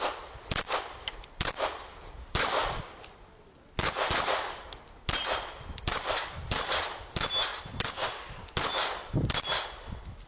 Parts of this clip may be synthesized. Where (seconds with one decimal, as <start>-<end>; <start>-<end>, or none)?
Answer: none